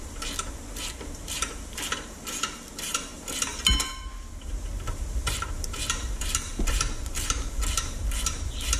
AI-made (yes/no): yes